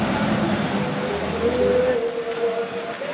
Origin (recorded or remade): recorded